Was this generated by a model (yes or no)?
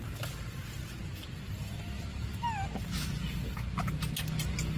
no